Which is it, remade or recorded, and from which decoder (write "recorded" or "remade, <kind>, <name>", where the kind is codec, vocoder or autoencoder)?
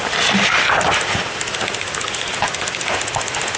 recorded